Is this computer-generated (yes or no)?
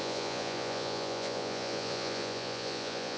yes